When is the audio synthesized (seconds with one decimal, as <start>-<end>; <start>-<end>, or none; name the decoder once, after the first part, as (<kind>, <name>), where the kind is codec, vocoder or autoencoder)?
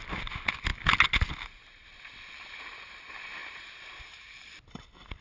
3.4-4.6 (vocoder, BigVGAN v2)